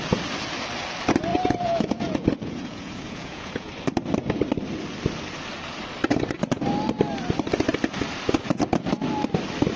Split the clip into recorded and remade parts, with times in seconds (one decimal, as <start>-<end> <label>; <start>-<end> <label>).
0.0-1.3 recorded; 1.3-3.7 remade; 3.7-9.8 recorded